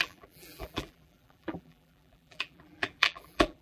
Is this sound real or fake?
fake